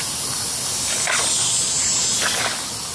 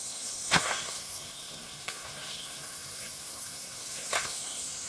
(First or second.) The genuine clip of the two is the first